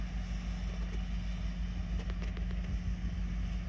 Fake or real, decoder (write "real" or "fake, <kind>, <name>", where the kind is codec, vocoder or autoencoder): real